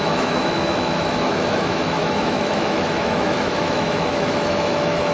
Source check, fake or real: fake